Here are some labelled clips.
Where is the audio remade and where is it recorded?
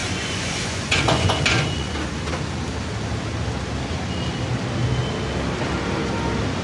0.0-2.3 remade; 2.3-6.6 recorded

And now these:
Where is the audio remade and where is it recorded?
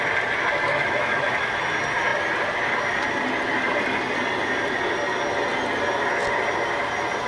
0.0-0.7 recorded; 0.7-1.5 remade; 1.5-7.3 recorded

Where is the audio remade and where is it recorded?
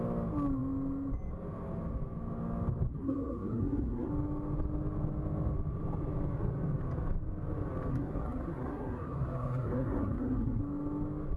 0.0-2.9 recorded; 2.9-4.1 remade; 4.1-7.9 recorded; 7.9-10.6 remade; 10.6-11.4 recorded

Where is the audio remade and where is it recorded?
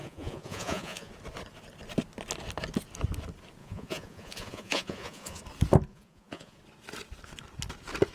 0.0-1.1 remade; 1.1-3.6 recorded; 3.6-5.4 remade; 5.4-5.9 recorded; 5.9-6.6 remade; 6.6-8.1 recorded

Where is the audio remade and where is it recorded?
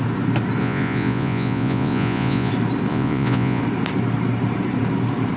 0.0-0.6 recorded; 0.6-2.5 remade; 2.5-2.9 recorded; 2.9-3.6 remade; 3.6-5.4 recorded